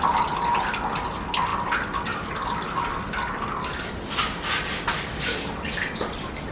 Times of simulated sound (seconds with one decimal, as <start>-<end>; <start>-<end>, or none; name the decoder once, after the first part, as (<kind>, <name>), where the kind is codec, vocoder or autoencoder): none